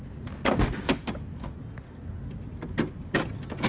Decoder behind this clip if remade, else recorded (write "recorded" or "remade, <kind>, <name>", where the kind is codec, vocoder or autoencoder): recorded